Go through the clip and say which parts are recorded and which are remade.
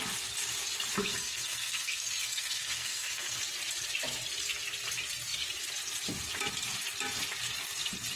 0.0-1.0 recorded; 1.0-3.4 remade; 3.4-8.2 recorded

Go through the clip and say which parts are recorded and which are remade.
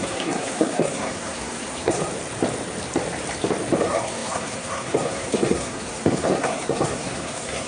0.0-2.1 remade; 2.1-3.8 recorded; 3.8-7.7 remade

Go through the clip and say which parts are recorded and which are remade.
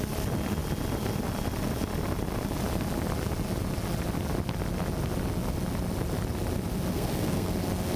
0.0-6.9 recorded; 6.9-7.5 remade; 7.5-8.0 recorded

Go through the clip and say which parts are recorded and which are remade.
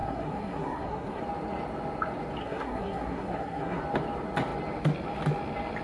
0.0-1.2 remade; 1.2-2.4 recorded; 2.4-3.8 remade; 3.8-5.8 recorded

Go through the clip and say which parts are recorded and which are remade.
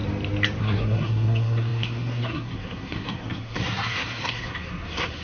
0.0-0.6 recorded; 0.6-5.2 remade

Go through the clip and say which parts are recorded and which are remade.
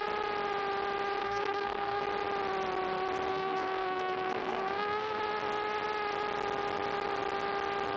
0.0-1.2 recorded; 1.2-2.0 remade; 2.0-3.3 recorded; 3.3-5.2 remade; 5.2-8.0 recorded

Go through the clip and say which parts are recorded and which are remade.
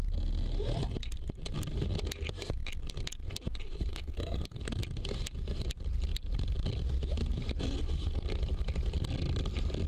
0.0-3.9 recorded; 3.9-4.6 remade; 4.6-9.9 recorded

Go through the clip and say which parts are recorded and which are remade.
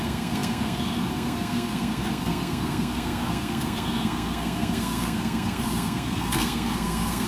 0.0-7.3 remade